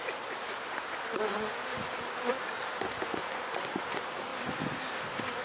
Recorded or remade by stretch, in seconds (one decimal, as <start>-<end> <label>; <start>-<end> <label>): 0.0-3.3 recorded; 3.3-3.8 remade; 3.8-5.4 recorded